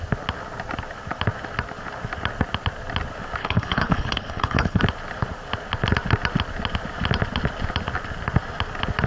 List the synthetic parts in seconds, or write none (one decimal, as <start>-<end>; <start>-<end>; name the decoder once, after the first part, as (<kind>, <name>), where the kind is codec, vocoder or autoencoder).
3.4-4.8 (codec, HILCodec)